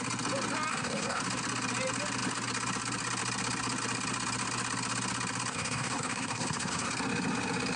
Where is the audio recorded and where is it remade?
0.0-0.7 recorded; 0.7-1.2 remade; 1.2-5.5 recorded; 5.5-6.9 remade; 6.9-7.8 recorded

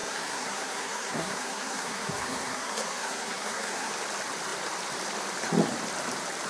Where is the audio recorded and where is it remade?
0.0-3.9 remade; 3.9-6.5 recorded